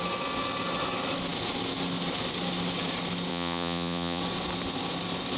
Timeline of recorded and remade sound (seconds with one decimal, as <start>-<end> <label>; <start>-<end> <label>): 0.0-3.3 recorded; 3.3-4.2 remade; 4.2-5.4 recorded